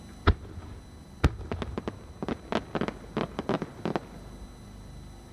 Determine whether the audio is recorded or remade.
recorded